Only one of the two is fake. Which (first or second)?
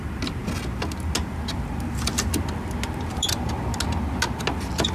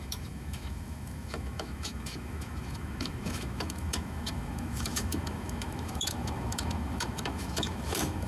second